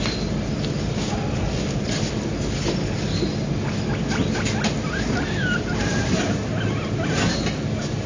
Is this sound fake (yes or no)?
no